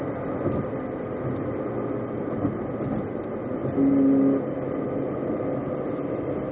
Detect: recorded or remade recorded